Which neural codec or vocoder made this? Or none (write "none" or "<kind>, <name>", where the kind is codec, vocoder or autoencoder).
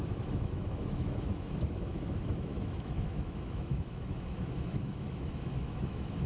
autoencoder, DAC-VAE